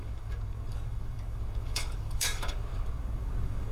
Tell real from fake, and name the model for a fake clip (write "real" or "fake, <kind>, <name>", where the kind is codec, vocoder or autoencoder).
fake, codec, DAC